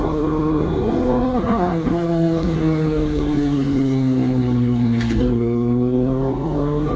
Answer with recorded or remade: remade